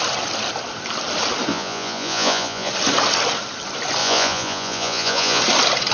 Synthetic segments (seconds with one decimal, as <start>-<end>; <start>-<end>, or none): 1.5-2.7; 4.0-5.4